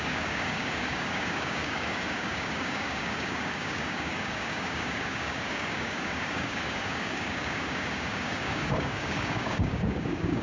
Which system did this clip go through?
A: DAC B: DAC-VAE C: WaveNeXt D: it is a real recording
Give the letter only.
A